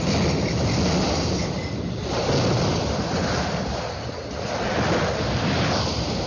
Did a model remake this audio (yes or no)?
no